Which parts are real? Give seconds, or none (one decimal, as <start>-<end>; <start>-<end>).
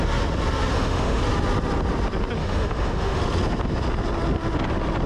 0.0-0.7; 1.2-2.4; 3.2-5.1